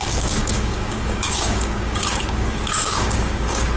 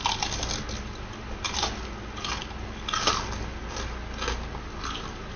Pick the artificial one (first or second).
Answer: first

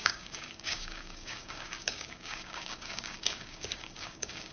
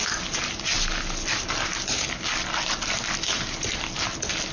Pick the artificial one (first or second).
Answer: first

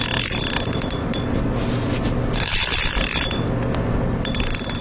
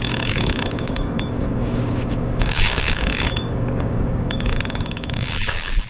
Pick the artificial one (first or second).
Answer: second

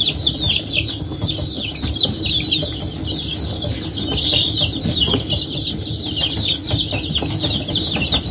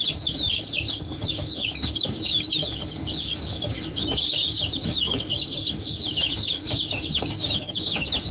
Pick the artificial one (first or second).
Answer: second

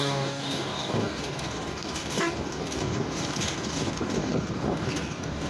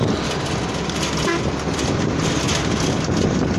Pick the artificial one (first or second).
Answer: first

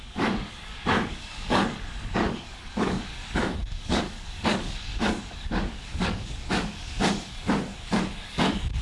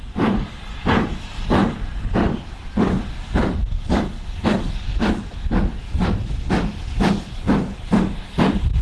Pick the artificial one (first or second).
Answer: first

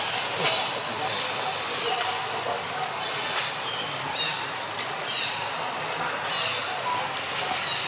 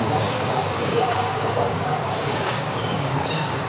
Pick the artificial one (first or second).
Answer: second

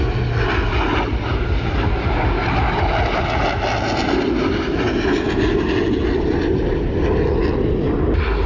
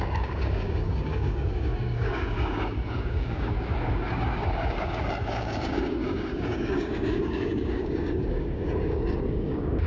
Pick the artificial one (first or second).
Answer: second